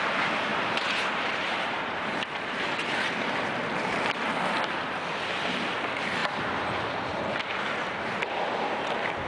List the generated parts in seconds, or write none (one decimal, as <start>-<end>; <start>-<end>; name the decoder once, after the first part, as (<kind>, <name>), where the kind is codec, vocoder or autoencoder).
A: 0.5-2.6 (vocoder, BigVGAN v2); 6.2-7.1